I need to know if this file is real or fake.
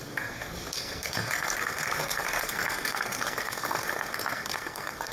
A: fake